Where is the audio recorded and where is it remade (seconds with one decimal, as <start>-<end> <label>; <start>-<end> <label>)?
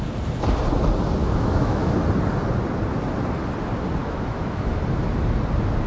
0.0-1.2 recorded; 1.2-1.9 remade; 1.9-4.0 recorded; 4.0-4.8 remade; 4.8-5.9 recorded